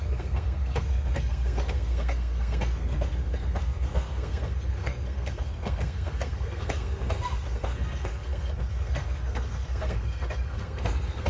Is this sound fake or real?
fake